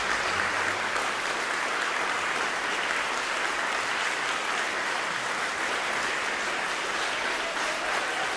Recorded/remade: recorded